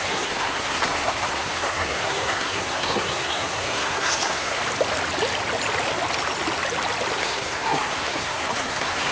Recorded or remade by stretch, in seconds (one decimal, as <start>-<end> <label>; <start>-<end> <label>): 0.0-4.6 remade; 4.6-7.2 recorded; 7.2-9.1 remade